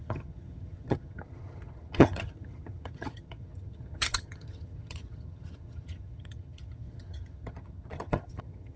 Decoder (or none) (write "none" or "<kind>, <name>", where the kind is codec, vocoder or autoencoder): vocoder, HiFi-GAN